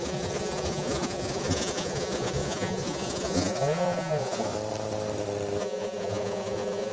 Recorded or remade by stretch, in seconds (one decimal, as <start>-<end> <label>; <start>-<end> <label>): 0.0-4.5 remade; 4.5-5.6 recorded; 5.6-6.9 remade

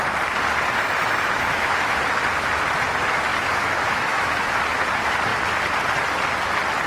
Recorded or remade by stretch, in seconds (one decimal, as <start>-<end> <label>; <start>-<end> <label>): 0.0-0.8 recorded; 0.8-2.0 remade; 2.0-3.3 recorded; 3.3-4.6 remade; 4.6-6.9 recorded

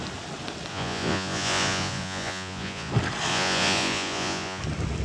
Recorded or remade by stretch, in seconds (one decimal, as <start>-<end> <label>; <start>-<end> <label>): 0.0-0.7 recorded; 0.7-2.9 remade; 2.9-3.3 recorded; 3.3-4.6 remade; 4.6-5.0 recorded